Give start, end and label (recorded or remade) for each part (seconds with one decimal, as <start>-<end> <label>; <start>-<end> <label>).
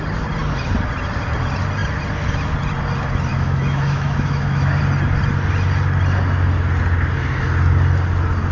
0.0-3.3 recorded; 3.3-4.8 remade; 4.8-8.5 recorded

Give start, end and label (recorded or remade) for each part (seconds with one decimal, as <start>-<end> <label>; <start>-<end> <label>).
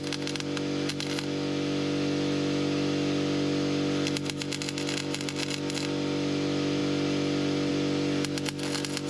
0.0-9.1 recorded